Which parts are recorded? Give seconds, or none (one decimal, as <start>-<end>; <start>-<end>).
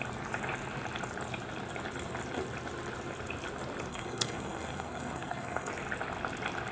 0.0-3.9; 5.7-6.7